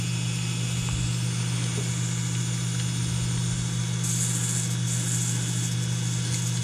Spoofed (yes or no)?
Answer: no